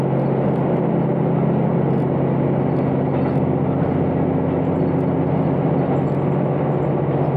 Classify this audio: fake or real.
real